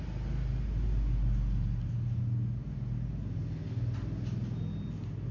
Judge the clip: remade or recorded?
recorded